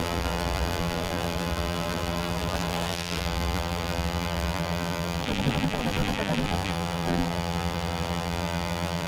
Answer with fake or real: fake